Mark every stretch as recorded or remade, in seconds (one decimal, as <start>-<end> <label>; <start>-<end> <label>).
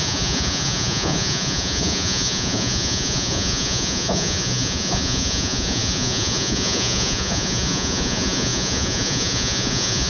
0.0-10.1 remade